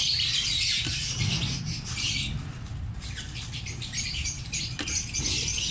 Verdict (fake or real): real